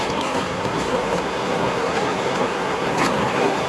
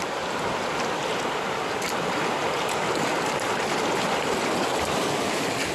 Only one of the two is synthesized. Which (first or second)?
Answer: first